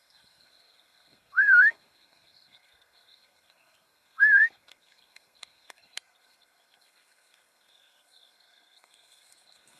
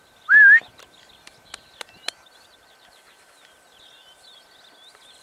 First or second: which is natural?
second